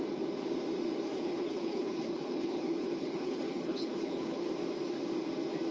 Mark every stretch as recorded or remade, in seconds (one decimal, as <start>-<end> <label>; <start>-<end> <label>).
0.0-1.1 recorded; 1.1-4.5 remade; 4.5-5.7 recorded